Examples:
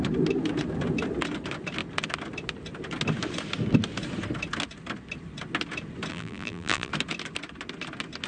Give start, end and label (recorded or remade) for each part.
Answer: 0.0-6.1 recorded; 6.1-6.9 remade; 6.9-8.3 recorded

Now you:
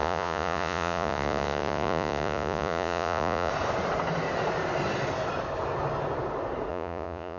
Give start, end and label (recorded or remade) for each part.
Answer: 0.0-3.5 remade; 3.5-6.7 recorded; 6.7-7.4 remade